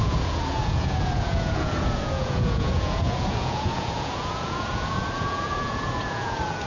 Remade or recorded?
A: remade